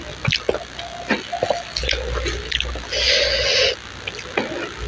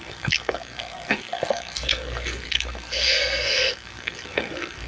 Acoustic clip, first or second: first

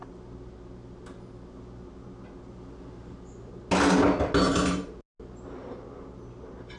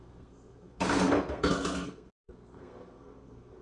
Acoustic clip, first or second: first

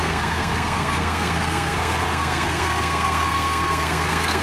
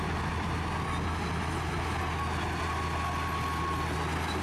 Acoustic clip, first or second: second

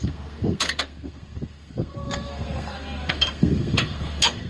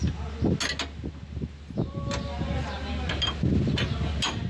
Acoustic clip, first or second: second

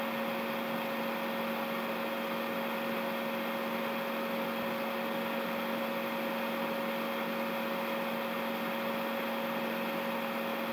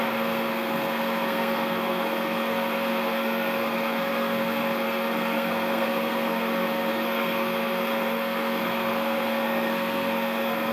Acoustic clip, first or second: first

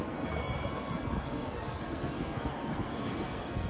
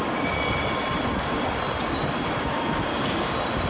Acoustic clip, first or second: second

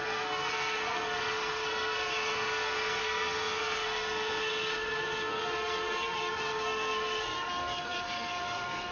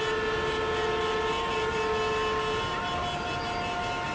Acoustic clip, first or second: second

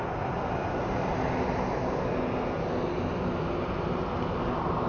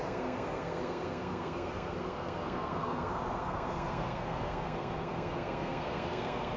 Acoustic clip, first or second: first